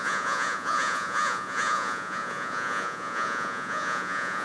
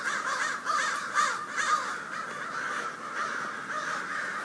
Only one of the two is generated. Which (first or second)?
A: first